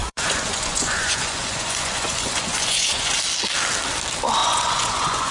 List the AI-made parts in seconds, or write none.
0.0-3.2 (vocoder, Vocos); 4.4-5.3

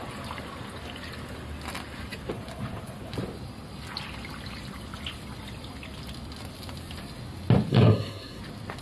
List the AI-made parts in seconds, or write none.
7.7-8.4 (codec, SNAC)